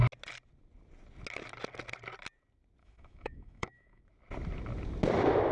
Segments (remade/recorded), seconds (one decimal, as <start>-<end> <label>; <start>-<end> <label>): 0.0-2.8 recorded; 2.8-4.0 remade; 4.0-5.5 recorded